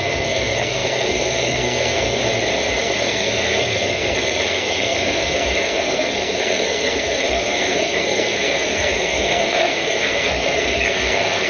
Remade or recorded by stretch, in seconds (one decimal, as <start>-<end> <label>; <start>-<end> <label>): 0.0-2.2 remade; 2.2-2.8 recorded; 2.8-11.5 remade